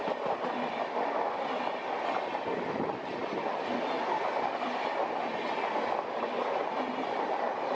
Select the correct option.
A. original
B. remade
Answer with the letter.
A